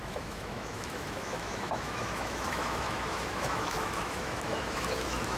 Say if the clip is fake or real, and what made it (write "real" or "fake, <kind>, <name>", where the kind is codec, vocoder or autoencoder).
fake, autoencoder, DAC-VAE